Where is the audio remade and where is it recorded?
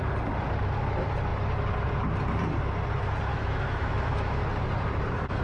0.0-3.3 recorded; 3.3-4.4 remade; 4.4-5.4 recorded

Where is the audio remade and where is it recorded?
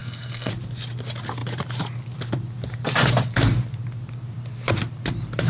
0.0-0.5 remade; 0.5-5.5 recorded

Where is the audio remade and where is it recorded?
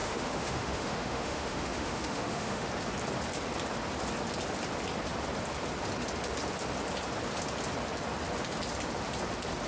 0.0-2.7 remade; 2.7-9.7 recorded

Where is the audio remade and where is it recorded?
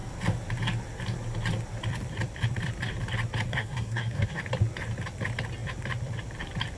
0.0-3.5 recorded; 3.5-4.4 remade; 4.4-6.8 recorded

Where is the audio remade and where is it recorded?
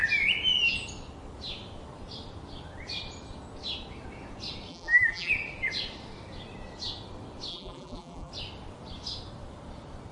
0.0-4.7 recorded; 4.7-5.3 remade; 5.3-7.5 recorded; 7.5-8.3 remade; 8.3-10.1 recorded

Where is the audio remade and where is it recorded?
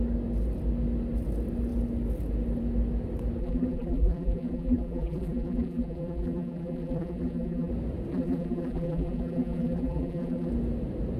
0.0-3.4 recorded; 3.4-7.7 remade; 7.7-8.1 recorded; 8.1-10.5 remade; 10.5-11.2 recorded